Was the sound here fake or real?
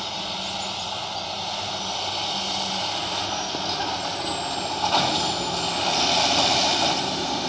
real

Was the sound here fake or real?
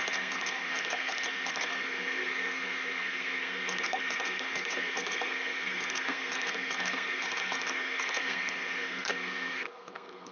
fake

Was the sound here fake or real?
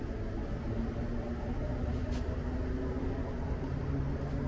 real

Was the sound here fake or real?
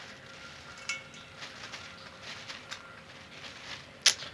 real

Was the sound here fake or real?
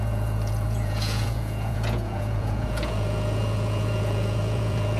fake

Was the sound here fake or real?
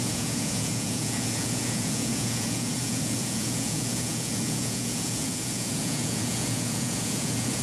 fake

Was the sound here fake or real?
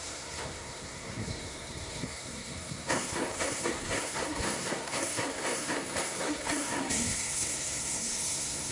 fake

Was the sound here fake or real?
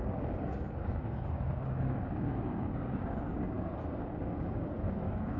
fake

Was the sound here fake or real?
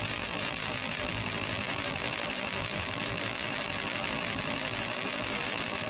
fake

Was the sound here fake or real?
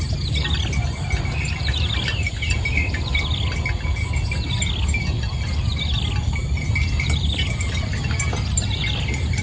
real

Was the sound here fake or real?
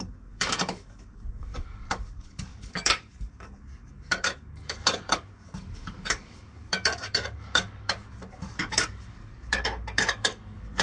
fake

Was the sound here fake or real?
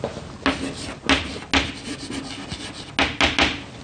real